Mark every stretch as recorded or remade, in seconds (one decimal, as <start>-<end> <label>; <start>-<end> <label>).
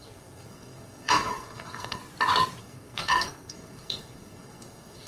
0.0-2.0 remade; 2.0-2.6 recorded; 2.6-5.1 remade